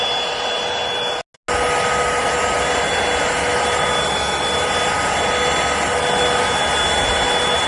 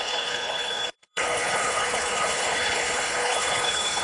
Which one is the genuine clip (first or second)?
first